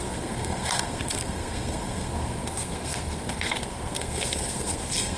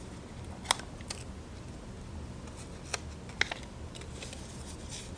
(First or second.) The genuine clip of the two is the second